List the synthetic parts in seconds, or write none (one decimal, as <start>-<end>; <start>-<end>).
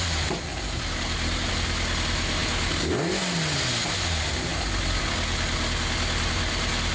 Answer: none